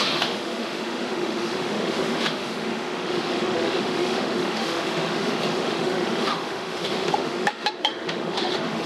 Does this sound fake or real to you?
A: fake